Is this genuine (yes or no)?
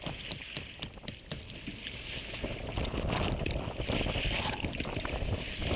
no